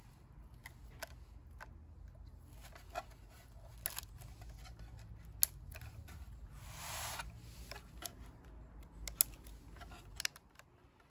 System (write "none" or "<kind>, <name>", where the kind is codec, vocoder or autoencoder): none